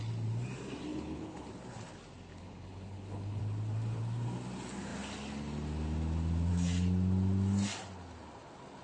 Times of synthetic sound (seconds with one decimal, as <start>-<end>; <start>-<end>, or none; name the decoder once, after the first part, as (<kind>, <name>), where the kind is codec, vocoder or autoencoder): 0.9-1.5 (codec, HILCodec); 2.3-3.4